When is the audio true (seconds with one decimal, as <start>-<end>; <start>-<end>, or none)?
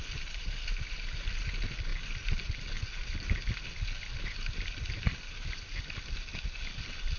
0.0-7.2